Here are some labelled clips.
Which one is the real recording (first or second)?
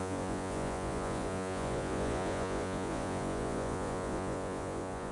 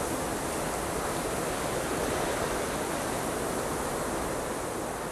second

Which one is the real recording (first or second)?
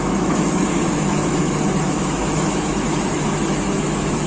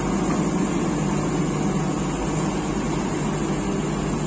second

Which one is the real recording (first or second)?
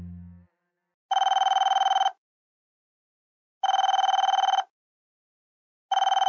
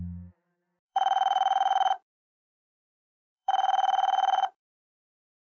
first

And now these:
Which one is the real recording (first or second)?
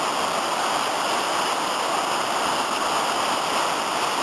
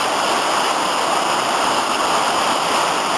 first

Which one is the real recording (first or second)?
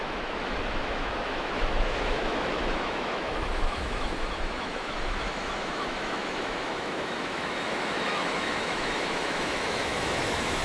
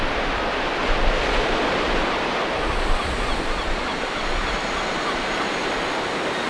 second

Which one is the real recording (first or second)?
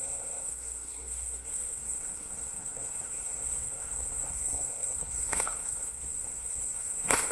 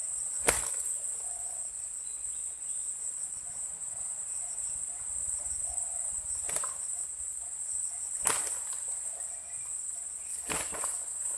second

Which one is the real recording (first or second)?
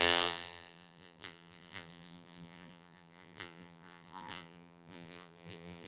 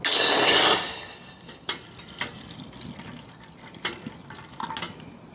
second